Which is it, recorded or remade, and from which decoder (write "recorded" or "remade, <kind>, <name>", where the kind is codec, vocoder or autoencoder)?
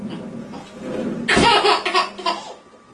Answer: recorded